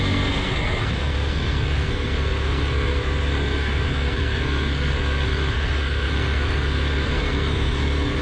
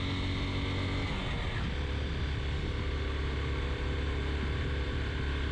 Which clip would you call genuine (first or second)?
second